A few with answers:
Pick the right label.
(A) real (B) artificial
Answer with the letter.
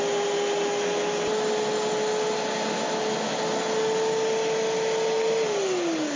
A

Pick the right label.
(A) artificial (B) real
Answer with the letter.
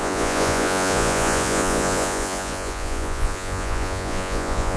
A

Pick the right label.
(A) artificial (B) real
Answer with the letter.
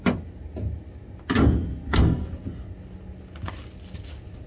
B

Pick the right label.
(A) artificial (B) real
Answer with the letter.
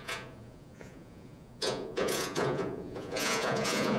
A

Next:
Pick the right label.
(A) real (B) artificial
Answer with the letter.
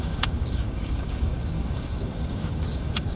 B